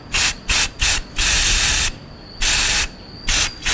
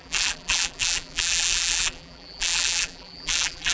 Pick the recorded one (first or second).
first